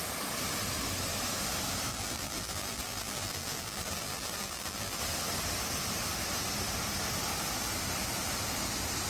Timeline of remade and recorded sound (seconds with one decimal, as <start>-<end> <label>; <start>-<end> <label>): 0.0-1.9 recorded; 1.9-5.0 remade; 5.0-9.1 recorded